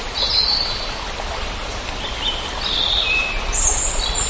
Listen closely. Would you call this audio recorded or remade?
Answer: recorded